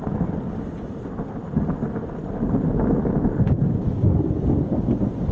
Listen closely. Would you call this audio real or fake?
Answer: real